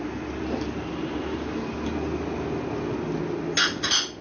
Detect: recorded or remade recorded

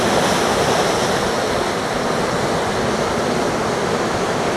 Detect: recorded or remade recorded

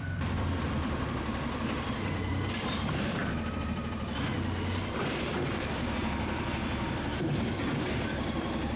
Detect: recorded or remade remade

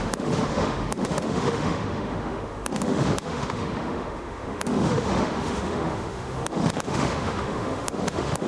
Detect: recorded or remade remade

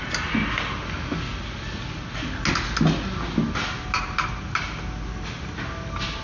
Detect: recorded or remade recorded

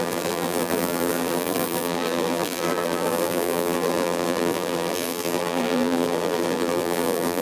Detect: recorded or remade remade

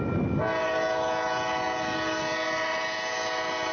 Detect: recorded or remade recorded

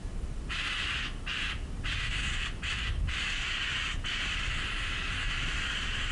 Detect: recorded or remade recorded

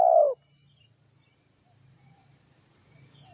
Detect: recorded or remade recorded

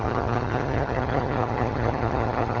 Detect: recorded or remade remade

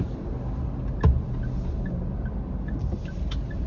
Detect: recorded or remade recorded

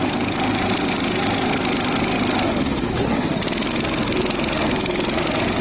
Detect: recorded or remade recorded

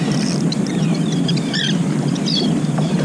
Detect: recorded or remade remade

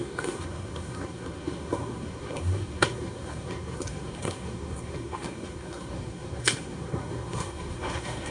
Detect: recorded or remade remade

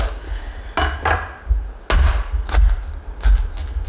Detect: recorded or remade recorded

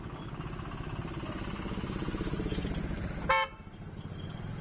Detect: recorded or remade recorded